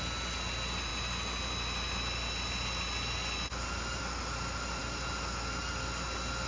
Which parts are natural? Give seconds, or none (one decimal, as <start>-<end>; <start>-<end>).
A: 0.0-6.5